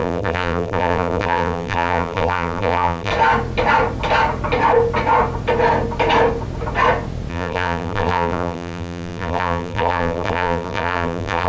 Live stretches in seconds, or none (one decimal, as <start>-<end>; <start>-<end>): 3.1-7.3